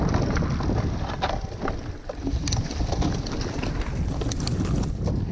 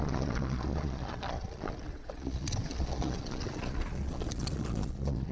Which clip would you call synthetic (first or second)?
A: second